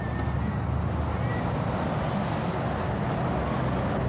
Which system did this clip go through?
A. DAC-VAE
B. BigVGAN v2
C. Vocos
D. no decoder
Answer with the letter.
D